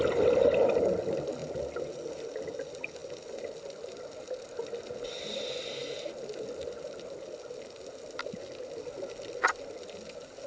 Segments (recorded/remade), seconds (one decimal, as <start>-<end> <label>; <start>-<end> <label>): 0.0-10.5 recorded